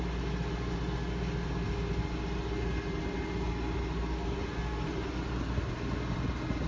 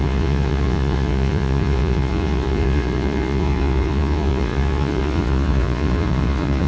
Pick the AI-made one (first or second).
second